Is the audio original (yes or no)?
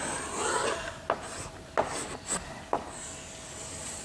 yes